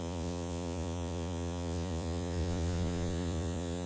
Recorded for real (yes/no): no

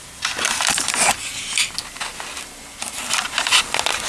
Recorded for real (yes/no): yes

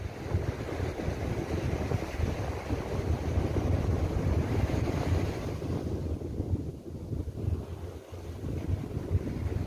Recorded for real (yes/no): yes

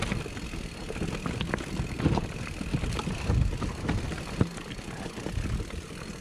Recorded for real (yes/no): yes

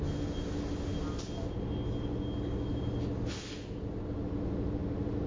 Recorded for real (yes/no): yes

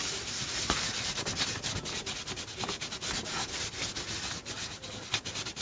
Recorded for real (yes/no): yes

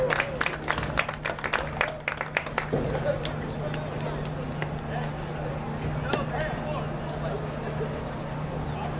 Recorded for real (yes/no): yes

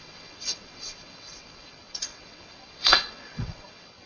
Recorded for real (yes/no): no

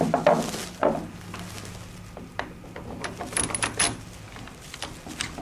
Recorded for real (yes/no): yes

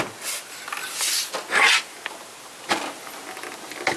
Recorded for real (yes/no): yes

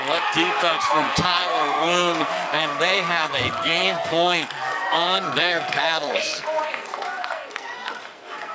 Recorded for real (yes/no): no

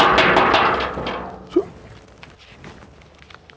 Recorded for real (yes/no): yes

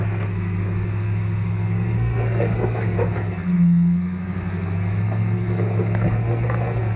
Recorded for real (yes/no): no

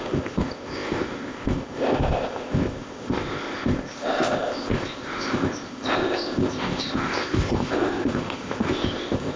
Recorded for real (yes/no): no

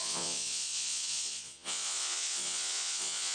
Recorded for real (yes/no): no